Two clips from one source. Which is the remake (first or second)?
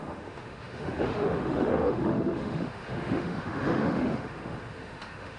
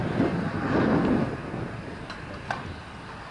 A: first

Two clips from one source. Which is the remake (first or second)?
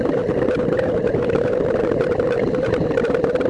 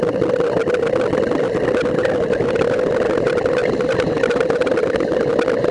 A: first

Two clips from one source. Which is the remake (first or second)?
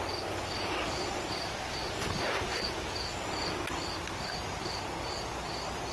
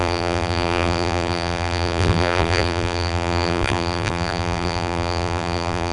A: second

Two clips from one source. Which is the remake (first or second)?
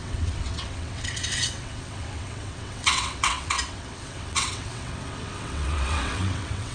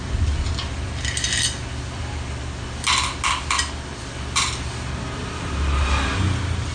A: first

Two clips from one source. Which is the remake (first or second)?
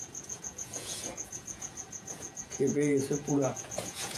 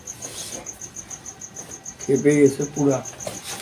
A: first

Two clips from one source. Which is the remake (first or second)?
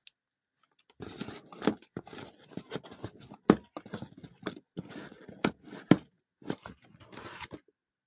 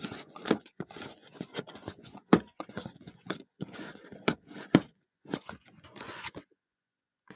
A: second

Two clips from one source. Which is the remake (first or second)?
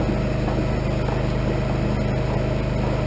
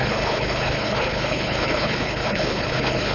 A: second